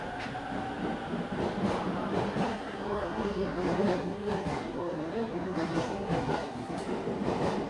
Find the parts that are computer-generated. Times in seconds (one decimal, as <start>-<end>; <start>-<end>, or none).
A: 2.4-6.8